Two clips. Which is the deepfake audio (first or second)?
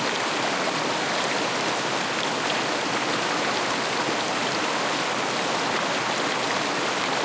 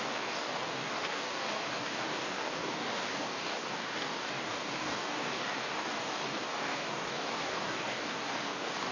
second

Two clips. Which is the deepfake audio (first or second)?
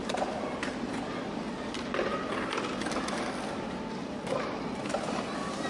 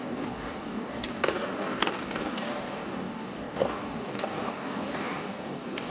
second